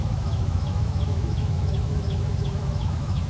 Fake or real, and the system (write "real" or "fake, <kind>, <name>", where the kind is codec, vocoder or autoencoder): fake, autoencoder, DAC-VAE